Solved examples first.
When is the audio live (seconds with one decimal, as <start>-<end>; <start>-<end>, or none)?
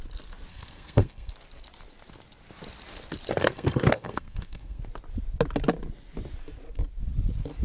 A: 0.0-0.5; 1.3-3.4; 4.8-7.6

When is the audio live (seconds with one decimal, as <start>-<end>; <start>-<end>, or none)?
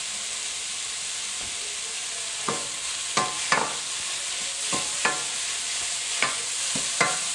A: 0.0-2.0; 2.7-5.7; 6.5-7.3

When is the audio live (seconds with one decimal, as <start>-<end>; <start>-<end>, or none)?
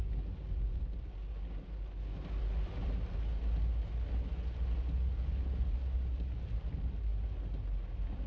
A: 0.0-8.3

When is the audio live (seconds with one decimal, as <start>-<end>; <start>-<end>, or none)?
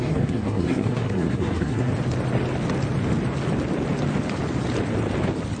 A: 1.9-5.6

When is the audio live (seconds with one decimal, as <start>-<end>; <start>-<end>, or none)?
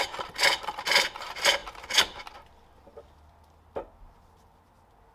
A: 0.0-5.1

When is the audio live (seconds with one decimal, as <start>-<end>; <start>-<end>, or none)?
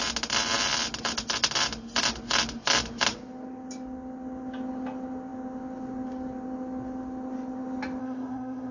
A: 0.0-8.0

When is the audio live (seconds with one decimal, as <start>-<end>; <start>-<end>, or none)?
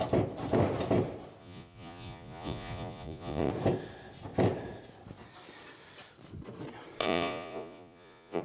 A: 0.0-1.4; 3.5-7.0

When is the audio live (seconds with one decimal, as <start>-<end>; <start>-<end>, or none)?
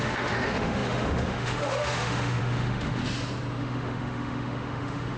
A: 3.0-3.6